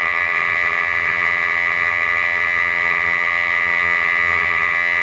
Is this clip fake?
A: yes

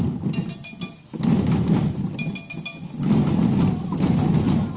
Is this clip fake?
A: no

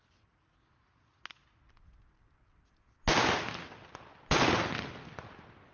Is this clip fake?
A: no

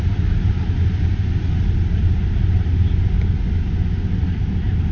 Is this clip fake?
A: no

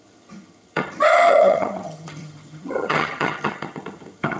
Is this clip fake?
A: yes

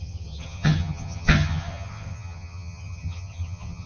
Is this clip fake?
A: yes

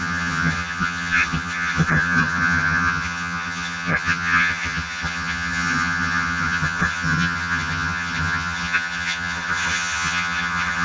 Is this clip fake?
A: yes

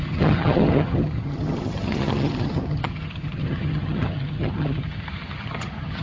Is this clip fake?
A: yes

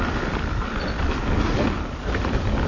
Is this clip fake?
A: no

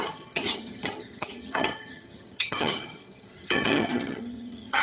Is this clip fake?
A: yes